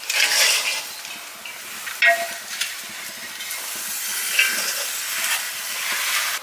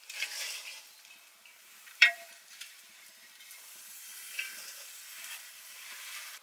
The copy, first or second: second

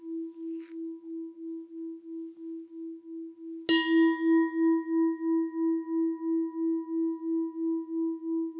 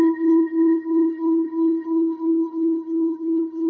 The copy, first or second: second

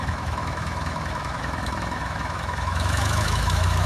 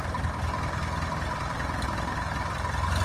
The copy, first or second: first